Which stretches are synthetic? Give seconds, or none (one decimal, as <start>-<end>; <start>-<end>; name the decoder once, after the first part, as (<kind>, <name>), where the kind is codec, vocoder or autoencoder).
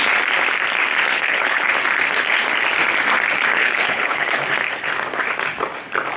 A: 1.1-1.7 (codec, HILCodec); 3.6-4.4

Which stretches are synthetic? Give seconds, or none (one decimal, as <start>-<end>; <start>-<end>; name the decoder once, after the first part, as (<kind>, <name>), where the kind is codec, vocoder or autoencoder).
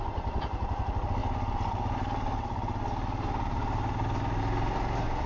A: none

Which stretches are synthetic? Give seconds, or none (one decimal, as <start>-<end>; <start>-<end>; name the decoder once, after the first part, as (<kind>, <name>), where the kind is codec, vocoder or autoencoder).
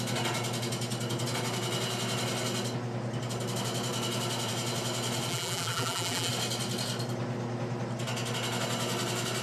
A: 5.3-6.3 (vocoder, BigVGAN v2)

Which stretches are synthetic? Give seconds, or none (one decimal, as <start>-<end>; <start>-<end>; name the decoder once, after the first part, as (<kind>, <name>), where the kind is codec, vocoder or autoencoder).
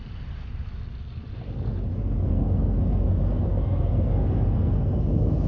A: 1.9-5.5 (codec, SNAC)